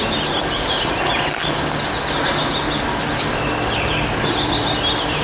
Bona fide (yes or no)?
yes